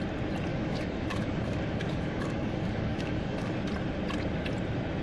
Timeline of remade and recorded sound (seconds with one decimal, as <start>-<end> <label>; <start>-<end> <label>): 0.0-0.5 recorded; 0.5-3.5 remade; 3.5-5.0 recorded